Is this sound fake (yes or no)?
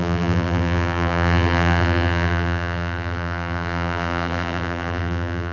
yes